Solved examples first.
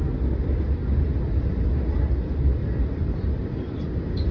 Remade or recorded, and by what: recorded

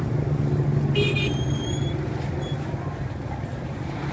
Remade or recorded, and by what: recorded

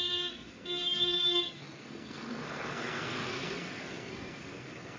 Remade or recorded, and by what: remade, codec, SNAC